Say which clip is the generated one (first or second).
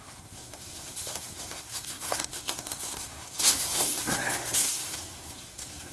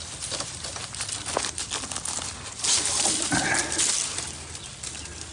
first